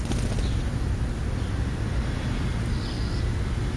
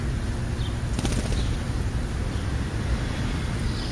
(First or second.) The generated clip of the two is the second